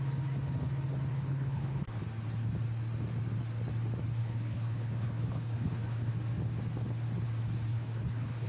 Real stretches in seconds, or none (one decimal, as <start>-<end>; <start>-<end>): 0.0-1.1; 2.0-4.2; 6.1-7.7